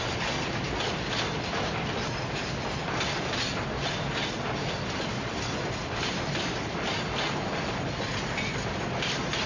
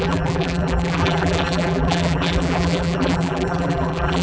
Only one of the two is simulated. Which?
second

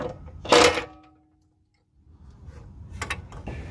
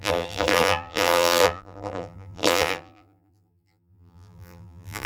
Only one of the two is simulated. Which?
second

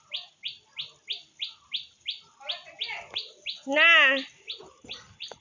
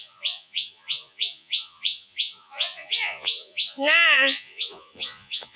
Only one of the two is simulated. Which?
second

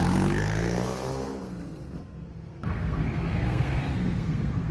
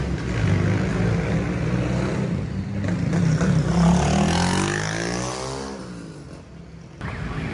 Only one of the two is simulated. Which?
first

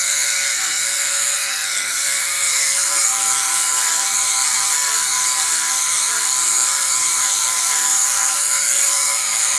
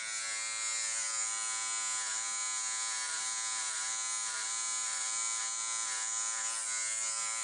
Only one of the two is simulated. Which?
first